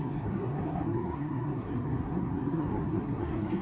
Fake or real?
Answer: fake